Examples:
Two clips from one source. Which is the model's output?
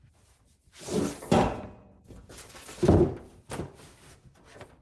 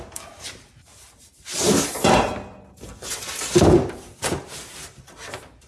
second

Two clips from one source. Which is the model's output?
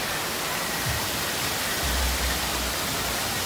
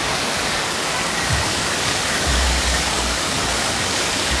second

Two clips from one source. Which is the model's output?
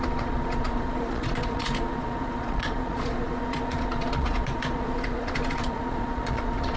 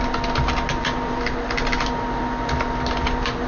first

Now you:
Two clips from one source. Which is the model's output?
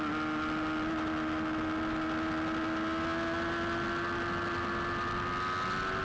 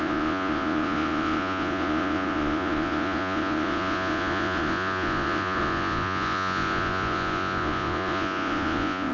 second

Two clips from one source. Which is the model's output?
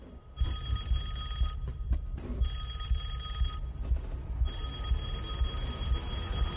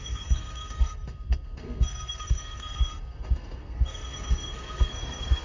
second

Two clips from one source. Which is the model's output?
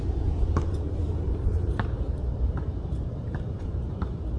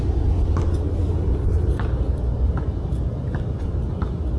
first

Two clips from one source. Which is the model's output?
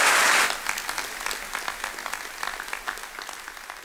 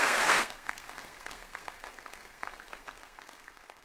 second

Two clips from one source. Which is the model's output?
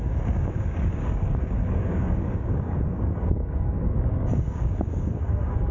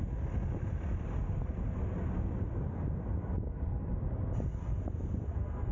first